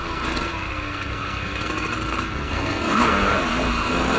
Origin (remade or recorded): remade